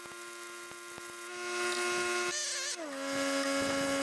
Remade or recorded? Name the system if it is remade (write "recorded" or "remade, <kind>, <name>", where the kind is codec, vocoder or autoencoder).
recorded